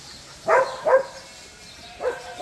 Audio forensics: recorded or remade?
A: remade